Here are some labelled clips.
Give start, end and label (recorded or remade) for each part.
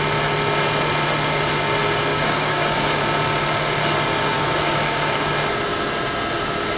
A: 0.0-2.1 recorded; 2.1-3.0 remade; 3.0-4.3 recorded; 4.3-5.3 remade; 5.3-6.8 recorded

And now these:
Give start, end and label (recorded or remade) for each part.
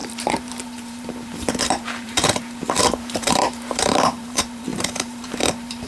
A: 0.0-5.9 remade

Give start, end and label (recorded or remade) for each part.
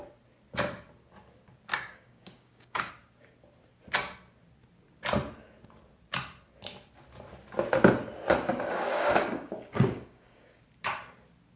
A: 0.0-1.7 recorded; 1.7-2.9 remade; 2.9-8.5 recorded; 8.5-10.6 remade; 10.6-11.6 recorded